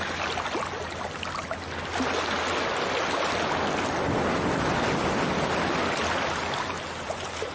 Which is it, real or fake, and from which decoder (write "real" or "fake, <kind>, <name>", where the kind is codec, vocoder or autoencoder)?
real